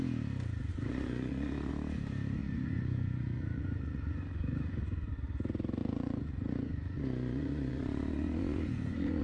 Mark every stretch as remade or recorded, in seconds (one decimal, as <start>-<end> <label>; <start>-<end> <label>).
0.0-0.7 recorded; 0.7-1.7 remade; 1.7-2.4 recorded; 2.4-5.1 remade; 5.1-5.8 recorded; 5.8-9.2 remade